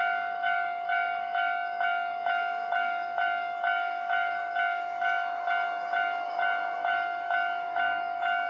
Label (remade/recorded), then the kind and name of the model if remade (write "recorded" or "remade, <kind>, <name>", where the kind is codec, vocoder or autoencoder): remade, autoencoder, DAC-VAE